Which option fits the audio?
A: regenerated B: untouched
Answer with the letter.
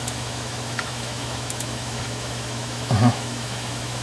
A